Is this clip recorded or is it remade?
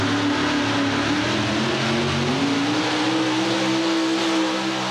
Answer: recorded